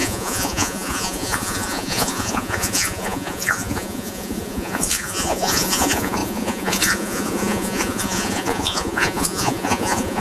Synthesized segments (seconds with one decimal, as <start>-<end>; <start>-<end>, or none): 0.0-10.2